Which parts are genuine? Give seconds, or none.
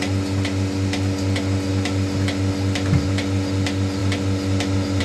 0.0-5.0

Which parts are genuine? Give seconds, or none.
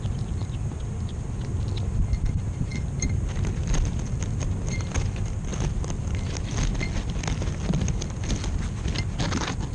0.0-2.7; 5.0-5.5; 7.1-9.7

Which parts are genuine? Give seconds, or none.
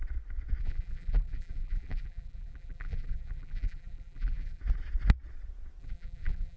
0.0-0.6; 4.6-5.8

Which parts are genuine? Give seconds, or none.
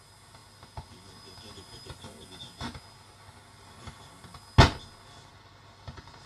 0.0-0.4; 2.0-5.3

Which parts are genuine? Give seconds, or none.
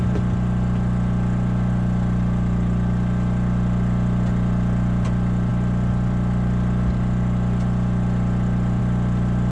0.0-9.5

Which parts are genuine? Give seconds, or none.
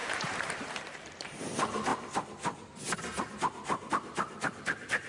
1.9-3.9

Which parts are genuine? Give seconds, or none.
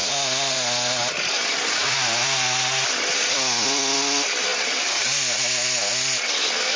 0.0-4.5; 5.1-6.8